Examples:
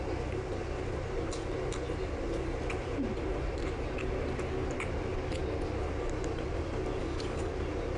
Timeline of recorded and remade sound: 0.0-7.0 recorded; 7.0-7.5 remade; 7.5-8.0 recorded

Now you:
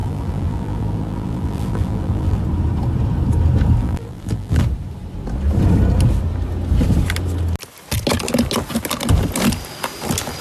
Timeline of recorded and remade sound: 0.0-2.4 remade; 2.4-3.8 recorded; 3.8-4.6 remade; 4.6-10.4 recorded

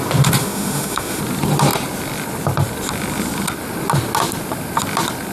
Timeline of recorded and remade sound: 0.0-0.4 recorded; 0.4-1.2 remade; 1.2-5.3 recorded